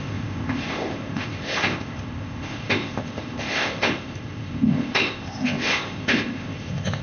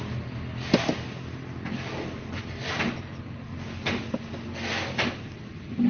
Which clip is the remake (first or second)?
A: first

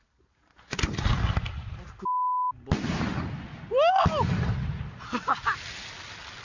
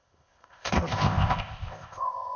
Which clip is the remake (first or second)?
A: second